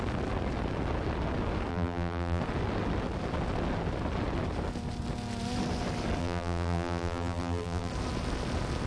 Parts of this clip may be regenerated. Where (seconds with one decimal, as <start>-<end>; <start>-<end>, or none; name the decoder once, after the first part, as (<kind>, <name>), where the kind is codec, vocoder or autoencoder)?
1.7-2.4 (vocoder, BigVGAN v2); 6.2-7.9

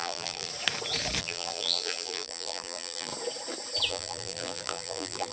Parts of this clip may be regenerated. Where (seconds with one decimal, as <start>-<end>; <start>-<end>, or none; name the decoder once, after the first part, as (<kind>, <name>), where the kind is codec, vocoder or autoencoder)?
0.0-0.5 (vocoder, BigVGAN v2); 1.2-3.1; 3.9-5.3

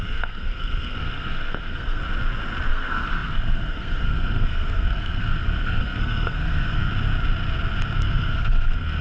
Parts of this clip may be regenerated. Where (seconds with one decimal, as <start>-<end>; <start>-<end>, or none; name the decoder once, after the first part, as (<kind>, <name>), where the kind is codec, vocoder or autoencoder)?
0.0-2.0 (codec, SNAC); 2.7-6.9; 8.0-9.0

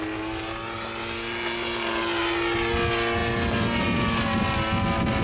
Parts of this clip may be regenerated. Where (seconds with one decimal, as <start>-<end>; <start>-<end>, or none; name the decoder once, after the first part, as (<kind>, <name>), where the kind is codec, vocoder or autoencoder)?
none

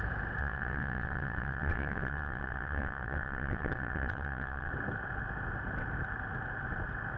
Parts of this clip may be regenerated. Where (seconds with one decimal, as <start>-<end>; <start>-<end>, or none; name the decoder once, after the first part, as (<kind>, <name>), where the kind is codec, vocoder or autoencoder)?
0.4-4.7 (vocoder, WaveNeXt)

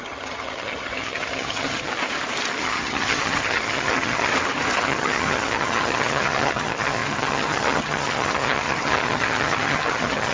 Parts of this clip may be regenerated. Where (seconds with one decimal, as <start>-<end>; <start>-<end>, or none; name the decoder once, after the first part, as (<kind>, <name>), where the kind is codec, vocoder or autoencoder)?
0.0-1.9 (vocoder, HiFi-GAN); 2.6-4.3; 4.8-10.3

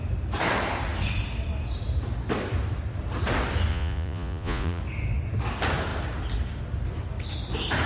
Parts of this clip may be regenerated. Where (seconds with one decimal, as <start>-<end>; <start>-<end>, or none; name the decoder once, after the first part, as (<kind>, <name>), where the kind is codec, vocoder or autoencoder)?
3.7-4.8 (vocoder, Vocos)

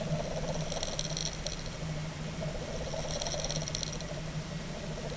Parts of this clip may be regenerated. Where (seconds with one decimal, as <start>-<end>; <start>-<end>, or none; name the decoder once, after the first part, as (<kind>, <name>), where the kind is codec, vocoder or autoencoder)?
none